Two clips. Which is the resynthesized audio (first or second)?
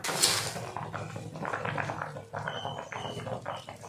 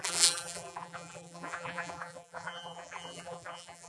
second